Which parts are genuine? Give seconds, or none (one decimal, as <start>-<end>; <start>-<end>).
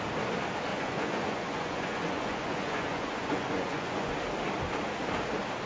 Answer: 0.0-0.7; 4.1-5.7